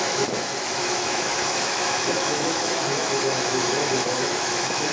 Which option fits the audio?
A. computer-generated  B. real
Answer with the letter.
A